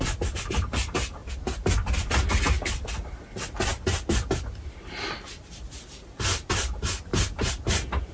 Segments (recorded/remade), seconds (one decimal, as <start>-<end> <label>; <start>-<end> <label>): 0.0-8.1 recorded